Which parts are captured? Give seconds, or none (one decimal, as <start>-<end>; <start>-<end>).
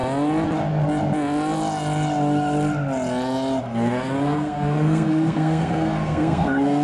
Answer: 0.0-3.6